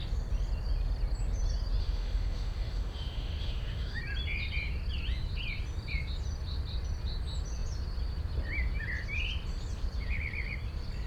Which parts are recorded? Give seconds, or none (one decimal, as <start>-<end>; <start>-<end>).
0.0-1.8; 4.0-11.1